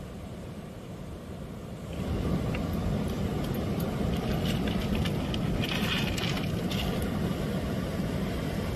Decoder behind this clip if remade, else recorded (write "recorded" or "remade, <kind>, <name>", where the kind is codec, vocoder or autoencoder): recorded